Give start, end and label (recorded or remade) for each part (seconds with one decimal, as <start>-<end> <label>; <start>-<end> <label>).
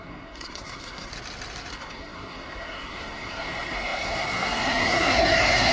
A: 0.0-1.1 remade; 1.1-1.7 recorded; 1.7-5.7 remade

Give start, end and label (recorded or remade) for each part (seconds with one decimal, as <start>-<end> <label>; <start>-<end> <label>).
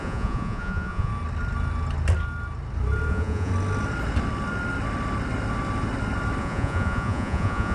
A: 0.0-1.1 remade; 1.1-3.1 recorded; 3.1-3.5 remade; 3.5-6.4 recorded; 6.4-7.7 remade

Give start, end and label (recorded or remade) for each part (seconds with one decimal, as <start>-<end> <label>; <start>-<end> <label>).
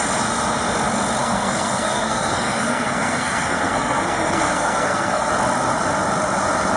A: 0.0-1.2 recorded; 1.2-5.3 remade; 5.3-6.8 recorded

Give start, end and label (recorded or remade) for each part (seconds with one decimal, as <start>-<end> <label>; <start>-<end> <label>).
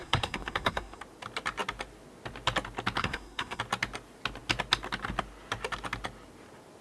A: 0.0-1.0 remade; 1.0-3.0 recorded; 3.0-3.6 remade; 3.6-6.8 recorded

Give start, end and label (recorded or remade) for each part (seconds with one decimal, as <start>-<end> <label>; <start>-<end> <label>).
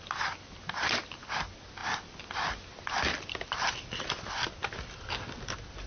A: 0.0-5.9 recorded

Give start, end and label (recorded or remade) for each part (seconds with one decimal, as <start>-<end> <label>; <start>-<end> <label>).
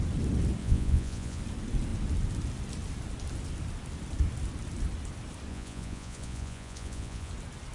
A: 0.0-0.6 recorded; 0.6-1.4 remade; 1.4-5.5 recorded; 5.5-7.3 remade; 7.3-7.7 recorded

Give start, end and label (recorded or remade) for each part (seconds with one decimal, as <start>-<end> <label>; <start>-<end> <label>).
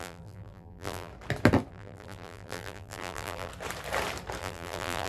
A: 0.0-1.1 remade; 1.1-1.7 recorded; 1.7-3.5 remade; 3.5-4.4 recorded; 4.4-5.1 remade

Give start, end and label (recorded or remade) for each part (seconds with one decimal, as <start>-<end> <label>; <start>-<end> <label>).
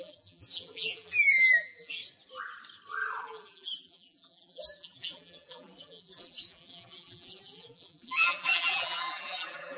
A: 0.0-2.0 remade; 2.0-3.2 recorded; 3.2-9.8 remade